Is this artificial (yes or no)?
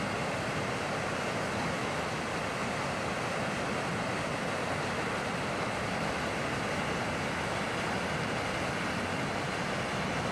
no